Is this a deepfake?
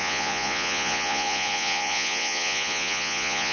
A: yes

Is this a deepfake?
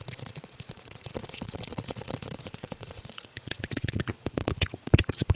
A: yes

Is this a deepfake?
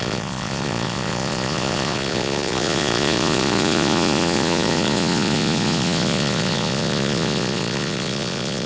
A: yes